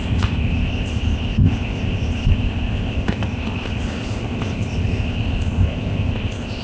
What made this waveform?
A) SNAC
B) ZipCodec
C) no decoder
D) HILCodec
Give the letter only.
B